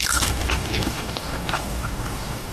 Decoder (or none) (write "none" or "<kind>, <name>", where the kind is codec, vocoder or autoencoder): codec, DAC